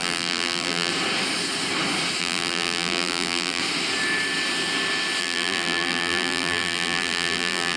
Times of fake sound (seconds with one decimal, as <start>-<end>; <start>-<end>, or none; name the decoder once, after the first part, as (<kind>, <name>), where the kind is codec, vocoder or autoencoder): 0.0-0.9 (vocoder, BigVGAN v2); 2.2-3.6; 5.2-7.8